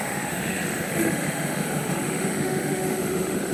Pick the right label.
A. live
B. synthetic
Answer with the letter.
B